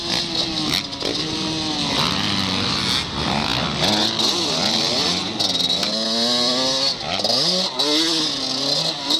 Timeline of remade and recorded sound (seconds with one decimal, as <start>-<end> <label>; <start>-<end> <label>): 0.0-9.2 recorded

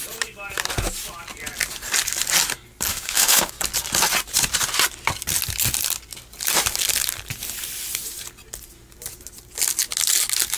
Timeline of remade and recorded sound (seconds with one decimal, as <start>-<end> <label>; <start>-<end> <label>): 0.0-2.9 recorded; 2.9-3.5 remade; 3.5-10.6 recorded